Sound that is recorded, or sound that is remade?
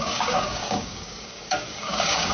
remade